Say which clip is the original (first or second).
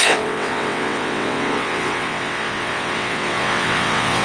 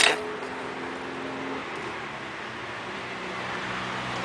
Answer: second